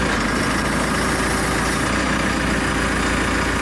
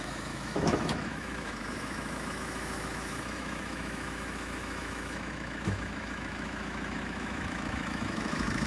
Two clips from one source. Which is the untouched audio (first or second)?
first